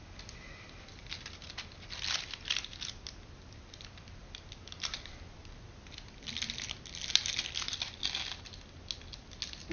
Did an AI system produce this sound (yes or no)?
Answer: no